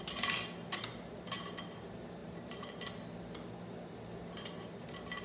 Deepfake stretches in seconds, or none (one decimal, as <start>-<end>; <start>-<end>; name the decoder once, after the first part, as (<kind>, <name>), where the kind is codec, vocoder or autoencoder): 2.2-2.8 (vocoder, BigVGAN v2)